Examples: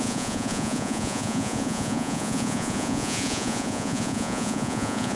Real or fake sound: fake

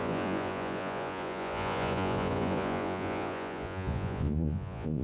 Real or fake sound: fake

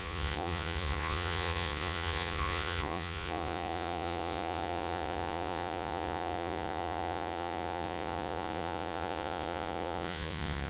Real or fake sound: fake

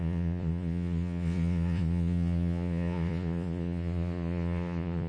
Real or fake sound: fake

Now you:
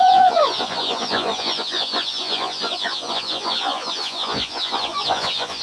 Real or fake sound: fake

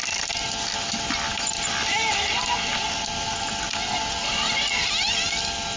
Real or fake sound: real